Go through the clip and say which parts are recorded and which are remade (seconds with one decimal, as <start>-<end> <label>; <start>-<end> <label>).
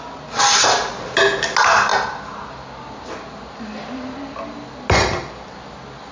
0.0-6.1 recorded